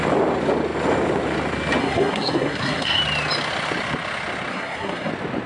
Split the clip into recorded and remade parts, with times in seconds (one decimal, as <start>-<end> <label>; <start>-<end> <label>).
0.0-1.8 recorded; 1.8-3.0 remade; 3.0-4.5 recorded; 4.5-5.1 remade; 5.1-5.5 recorded